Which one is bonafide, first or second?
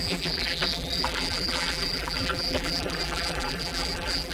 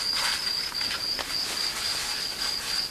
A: second